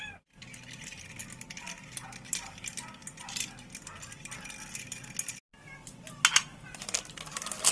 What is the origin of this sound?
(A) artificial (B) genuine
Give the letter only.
B